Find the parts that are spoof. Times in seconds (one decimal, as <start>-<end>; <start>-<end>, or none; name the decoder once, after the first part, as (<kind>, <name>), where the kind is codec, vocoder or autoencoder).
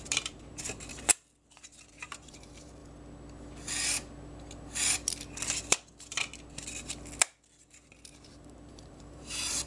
0.0-1.1 (vocoder, BigVGAN v2); 1.9-2.8; 7.7-9.7